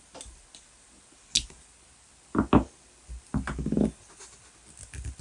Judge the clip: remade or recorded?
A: recorded